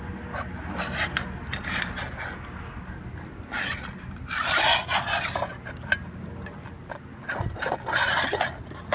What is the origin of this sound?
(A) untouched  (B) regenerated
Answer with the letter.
A